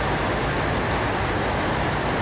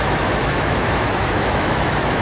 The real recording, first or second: first